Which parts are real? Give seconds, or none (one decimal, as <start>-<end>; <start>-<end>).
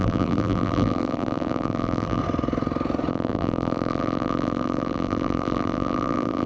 2.2-3.1